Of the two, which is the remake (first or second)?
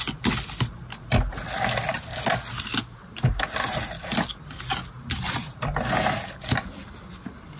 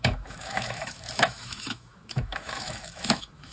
second